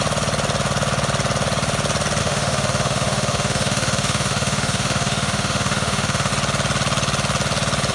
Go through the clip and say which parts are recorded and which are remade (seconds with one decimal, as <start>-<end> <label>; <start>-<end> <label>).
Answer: 0.0-2.2 recorded; 2.2-6.3 remade; 6.3-7.9 recorded